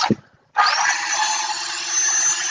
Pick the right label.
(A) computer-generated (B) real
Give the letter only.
B